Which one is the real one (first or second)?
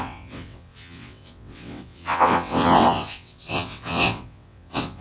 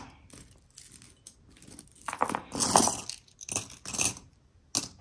second